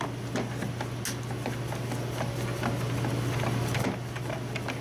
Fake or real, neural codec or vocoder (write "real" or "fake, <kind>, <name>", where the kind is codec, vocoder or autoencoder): real